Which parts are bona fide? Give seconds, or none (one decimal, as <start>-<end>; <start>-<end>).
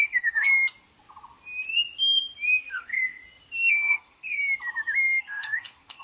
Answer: 0.5-2.6; 3.2-3.7; 4.4-5.2